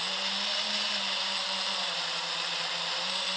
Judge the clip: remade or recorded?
remade